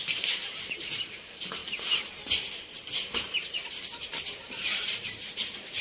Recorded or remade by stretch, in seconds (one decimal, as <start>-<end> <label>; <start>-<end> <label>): 0.0-1.6 remade; 1.6-4.4 recorded; 4.4-5.8 remade